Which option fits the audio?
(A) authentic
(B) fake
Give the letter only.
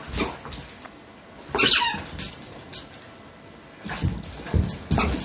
A